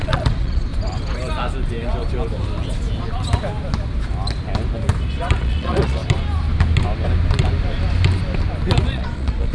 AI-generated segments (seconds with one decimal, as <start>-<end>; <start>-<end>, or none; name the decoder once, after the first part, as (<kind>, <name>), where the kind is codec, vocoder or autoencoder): 0.0-0.7 (vocoder, Vocos); 5.4-6.0; 8.9-9.5